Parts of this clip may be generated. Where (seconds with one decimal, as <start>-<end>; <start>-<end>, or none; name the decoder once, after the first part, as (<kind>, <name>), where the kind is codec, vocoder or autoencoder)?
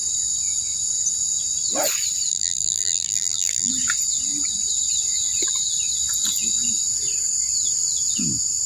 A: 2.3-3.7 (vocoder, BigVGAN v2)